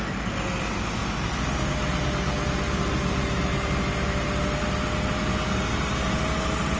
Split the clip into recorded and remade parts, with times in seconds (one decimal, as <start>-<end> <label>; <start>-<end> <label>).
0.0-6.8 recorded